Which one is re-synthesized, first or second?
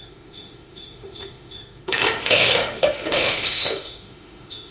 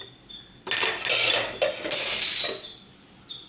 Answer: first